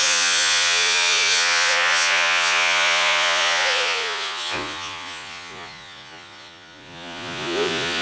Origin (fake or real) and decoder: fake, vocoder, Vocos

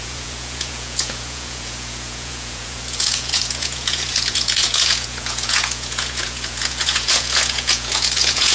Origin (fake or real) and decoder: fake, vocoder, Vocos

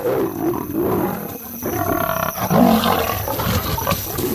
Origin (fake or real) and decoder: real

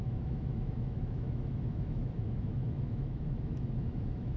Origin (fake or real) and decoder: fake, autoencoder, DAC-VAE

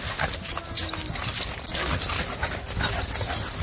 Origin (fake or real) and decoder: real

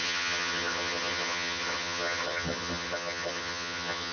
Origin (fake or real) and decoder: fake, vocoder, HiFi-GAN